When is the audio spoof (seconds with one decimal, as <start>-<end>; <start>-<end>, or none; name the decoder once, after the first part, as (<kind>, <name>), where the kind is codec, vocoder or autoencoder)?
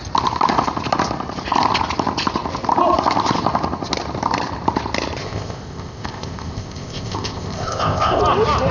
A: 5.2-8.2 (codec, ZipCodec)